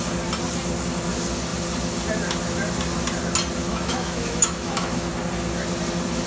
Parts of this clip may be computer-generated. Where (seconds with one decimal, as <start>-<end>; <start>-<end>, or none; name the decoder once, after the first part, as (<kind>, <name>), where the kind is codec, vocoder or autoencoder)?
3.7-5.1 (autoencoder, DAC-VAE)